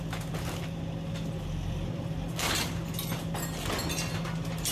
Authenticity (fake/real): real